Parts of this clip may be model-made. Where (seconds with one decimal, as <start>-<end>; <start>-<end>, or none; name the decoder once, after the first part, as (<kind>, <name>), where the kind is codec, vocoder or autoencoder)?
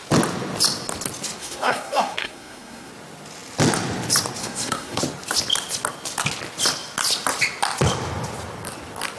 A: 1.4-2.9 (codec, SNAC); 4.4-5.0